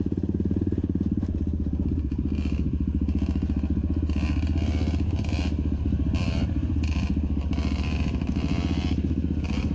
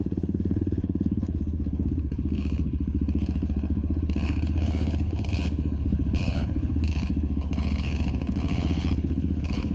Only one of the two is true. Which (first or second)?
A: first